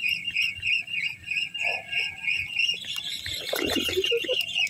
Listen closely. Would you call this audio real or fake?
real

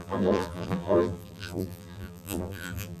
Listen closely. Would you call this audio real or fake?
fake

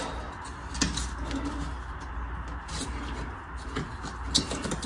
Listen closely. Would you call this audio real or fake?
real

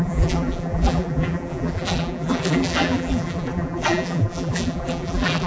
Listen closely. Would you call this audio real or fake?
fake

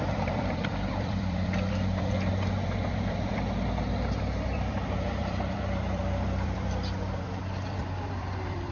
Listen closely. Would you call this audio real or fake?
fake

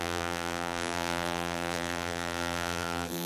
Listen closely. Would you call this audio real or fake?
fake